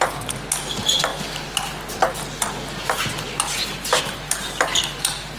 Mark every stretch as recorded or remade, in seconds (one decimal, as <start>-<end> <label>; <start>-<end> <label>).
0.0-5.4 recorded